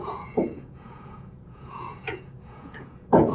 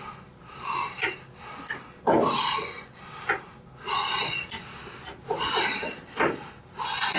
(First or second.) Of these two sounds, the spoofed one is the first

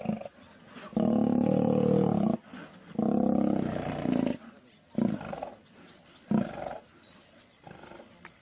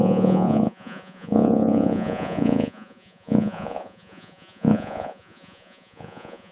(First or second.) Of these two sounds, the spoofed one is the second